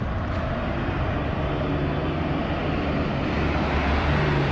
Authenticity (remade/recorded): recorded